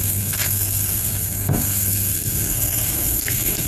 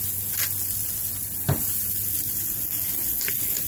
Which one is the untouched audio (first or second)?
second